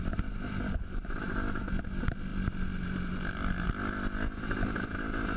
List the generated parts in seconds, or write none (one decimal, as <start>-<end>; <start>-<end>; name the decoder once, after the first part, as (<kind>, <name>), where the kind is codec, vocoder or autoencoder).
none